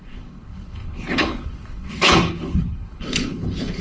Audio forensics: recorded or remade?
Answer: remade